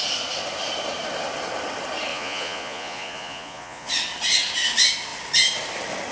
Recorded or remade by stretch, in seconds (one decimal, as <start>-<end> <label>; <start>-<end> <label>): 0.0-2.1 recorded; 2.1-3.9 remade; 3.9-6.1 recorded